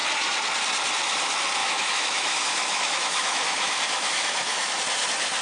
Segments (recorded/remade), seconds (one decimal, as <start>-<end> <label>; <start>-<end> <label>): 0.0-1.6 recorded; 1.6-4.8 remade; 4.8-5.4 recorded